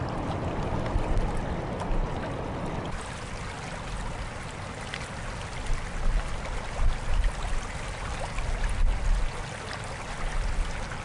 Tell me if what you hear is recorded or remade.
recorded